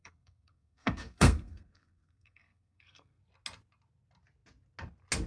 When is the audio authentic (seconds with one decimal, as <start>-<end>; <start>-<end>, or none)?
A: 3.2-5.3